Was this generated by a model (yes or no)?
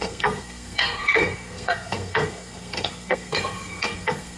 yes